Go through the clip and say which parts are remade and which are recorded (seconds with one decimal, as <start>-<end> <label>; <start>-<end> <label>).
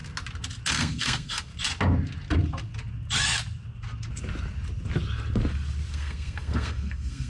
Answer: 0.0-0.7 recorded; 0.7-1.5 remade; 1.5-5.9 recorded; 5.9-7.3 remade